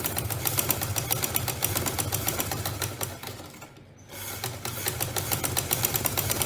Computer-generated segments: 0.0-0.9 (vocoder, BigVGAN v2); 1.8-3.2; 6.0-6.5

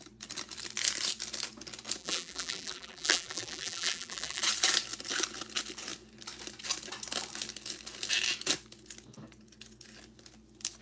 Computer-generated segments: 2.0-4.4 (vocoder, BigVGAN v2)

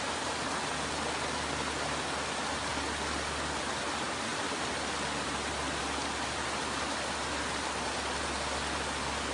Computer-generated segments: none